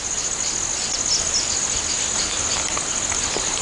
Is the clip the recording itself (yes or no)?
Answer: yes